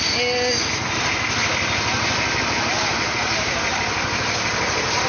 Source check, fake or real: real